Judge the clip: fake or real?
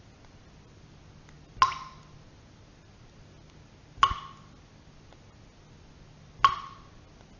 real